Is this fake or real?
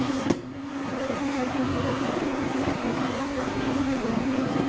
fake